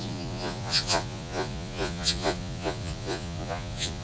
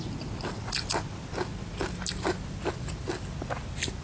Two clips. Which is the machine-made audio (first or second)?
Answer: first